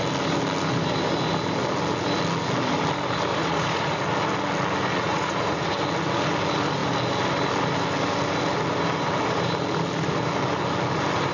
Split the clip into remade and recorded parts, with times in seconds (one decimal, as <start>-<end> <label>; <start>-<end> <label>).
0.0-3.3 recorded; 3.3-4.0 remade; 4.0-4.9 recorded; 4.9-5.7 remade; 5.7-11.3 recorded